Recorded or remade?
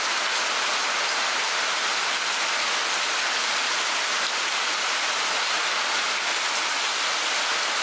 recorded